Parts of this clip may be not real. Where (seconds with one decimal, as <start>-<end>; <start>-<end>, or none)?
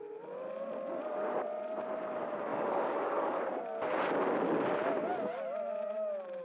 2.5-3.4